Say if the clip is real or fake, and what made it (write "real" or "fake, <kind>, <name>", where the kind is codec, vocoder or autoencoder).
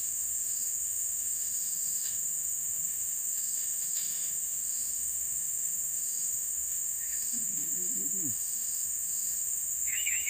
fake, autoencoder, DAC-VAE